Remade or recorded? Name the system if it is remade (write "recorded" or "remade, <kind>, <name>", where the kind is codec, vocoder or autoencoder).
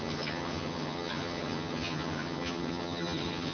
remade, vocoder, HiFi-GAN